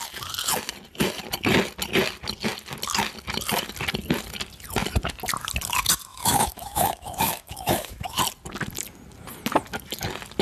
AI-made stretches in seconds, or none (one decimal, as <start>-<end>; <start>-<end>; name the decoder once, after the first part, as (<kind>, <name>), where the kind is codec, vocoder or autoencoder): 6.1-8.2 (autoencoder, DAC-VAE)